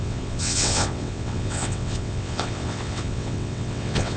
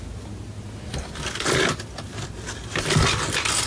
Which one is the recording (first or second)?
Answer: second